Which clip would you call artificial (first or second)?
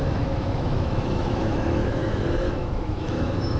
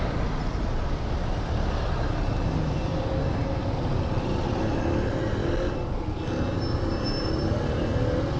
first